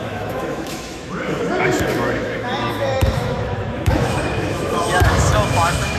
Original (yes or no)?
no